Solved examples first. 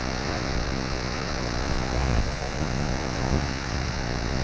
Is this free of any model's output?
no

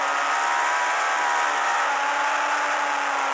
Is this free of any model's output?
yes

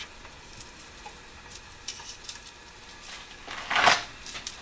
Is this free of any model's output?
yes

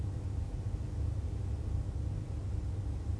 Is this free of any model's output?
yes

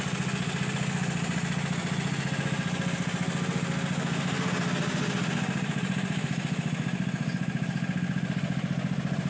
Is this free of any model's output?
yes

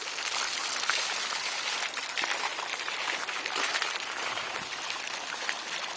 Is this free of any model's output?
yes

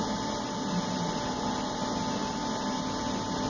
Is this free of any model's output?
yes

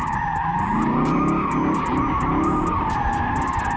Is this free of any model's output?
no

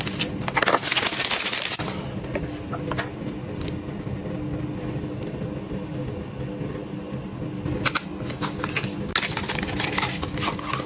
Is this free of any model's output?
yes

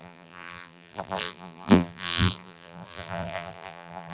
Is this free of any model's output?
no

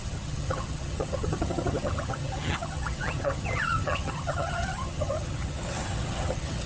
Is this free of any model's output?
no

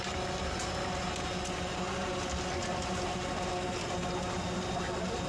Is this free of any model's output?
yes